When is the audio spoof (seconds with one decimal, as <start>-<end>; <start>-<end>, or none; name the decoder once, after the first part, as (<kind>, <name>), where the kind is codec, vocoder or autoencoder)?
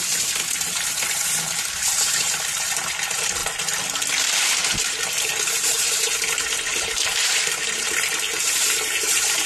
0.0-3.4 (vocoder, BigVGAN v2); 4.1-9.5